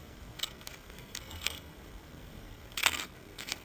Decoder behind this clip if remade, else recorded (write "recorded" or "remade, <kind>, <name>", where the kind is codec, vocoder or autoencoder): remade, codec, SNAC